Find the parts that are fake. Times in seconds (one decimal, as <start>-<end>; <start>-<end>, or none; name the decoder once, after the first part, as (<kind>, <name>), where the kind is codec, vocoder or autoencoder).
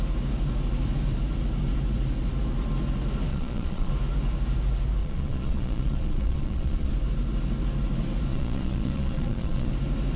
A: 3.3-3.9 (vocoder, Vocos); 5.0-6.9; 8.3-9.7